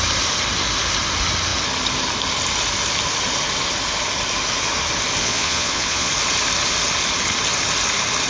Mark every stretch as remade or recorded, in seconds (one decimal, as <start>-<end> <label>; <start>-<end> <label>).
0.0-5.2 recorded; 5.2-6.1 remade; 6.1-8.3 recorded